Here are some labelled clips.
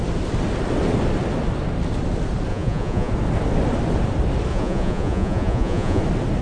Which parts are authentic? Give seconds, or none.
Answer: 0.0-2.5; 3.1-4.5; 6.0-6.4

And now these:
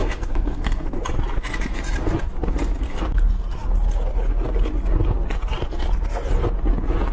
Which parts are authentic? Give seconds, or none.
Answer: 1.0-7.1

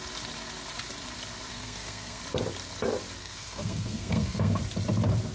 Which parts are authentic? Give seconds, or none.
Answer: 0.0-1.5; 2.2-3.2; 4.6-5.3

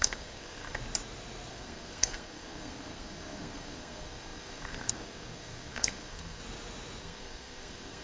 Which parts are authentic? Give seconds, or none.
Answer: 0.8-1.5; 6.4-7.0

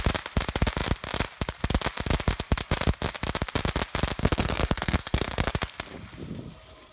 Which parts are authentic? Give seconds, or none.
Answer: 0.0-4.2; 5.5-6.9